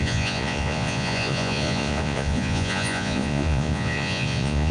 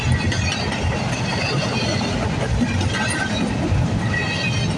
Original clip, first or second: second